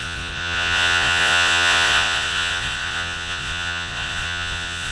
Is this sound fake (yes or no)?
yes